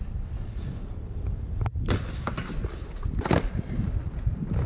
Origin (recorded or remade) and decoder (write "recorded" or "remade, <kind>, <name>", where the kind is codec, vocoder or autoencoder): recorded